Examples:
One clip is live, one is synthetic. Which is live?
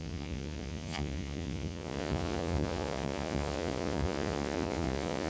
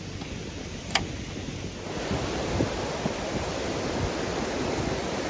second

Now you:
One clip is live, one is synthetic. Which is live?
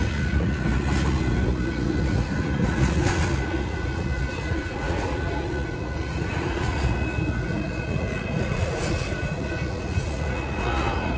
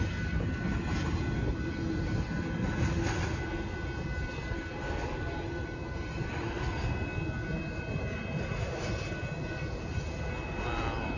second